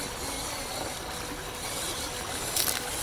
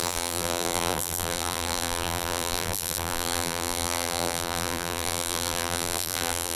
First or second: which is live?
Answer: first